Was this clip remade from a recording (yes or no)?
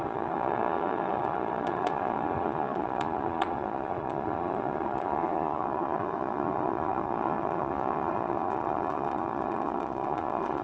yes